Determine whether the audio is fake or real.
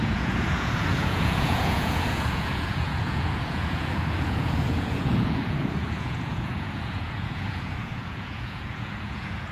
fake